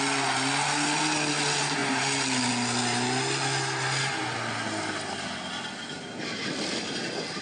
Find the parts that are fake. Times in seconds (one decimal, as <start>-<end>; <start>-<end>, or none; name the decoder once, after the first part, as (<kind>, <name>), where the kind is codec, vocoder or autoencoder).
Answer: none